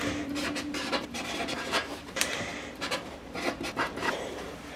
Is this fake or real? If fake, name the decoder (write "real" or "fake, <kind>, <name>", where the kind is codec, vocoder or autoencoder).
fake, vocoder, BigVGAN v2